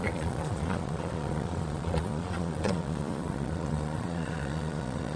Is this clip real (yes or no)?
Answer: no